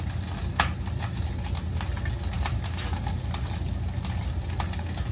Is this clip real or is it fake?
real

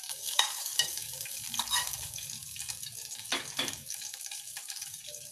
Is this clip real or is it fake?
fake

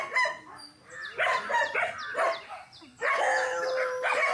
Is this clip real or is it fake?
real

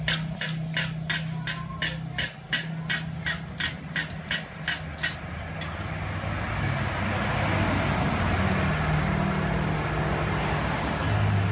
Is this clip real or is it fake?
real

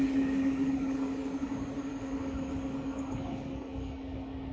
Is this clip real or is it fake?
fake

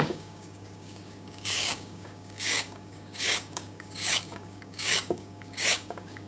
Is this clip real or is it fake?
fake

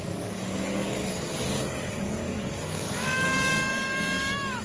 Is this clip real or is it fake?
fake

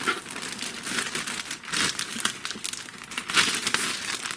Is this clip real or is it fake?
real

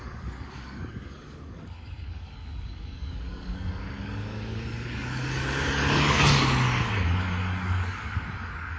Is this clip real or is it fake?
fake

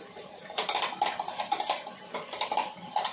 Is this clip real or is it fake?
real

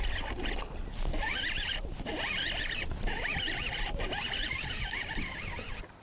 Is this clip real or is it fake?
real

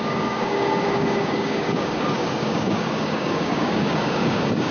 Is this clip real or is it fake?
fake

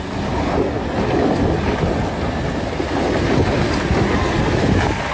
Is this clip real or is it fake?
real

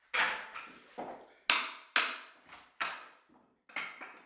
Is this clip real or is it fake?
real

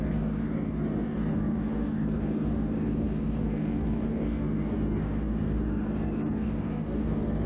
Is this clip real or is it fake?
fake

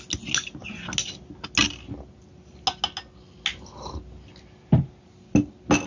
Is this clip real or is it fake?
real